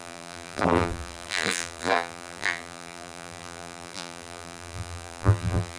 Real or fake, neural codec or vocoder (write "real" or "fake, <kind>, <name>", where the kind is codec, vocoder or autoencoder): fake, vocoder, BigVGAN v2